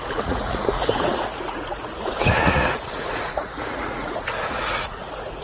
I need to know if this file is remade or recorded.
remade